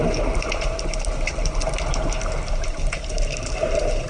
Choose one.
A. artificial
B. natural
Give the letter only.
B